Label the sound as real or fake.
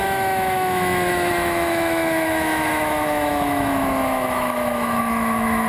fake